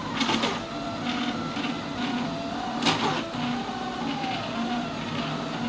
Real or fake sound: real